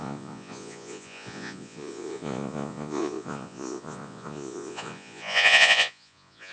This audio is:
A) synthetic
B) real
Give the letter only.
A